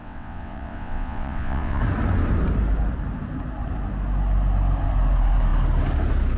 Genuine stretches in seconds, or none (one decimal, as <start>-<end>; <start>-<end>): 1.8-6.4